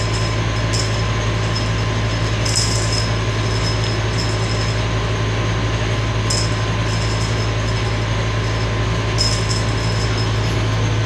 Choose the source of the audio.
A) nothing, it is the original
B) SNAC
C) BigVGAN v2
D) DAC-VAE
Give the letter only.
A